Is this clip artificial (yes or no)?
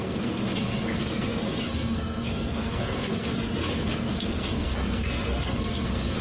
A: yes